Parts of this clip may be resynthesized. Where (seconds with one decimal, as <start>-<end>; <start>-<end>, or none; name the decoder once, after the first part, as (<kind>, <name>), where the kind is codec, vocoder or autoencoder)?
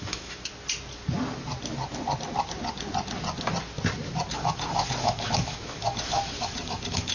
0.0-0.5 (autoencoder, DAC-VAE); 4.3-7.1